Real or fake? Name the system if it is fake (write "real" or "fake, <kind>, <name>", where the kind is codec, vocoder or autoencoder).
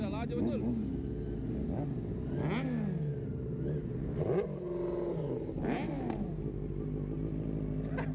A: real